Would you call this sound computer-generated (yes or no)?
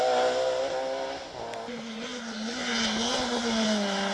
no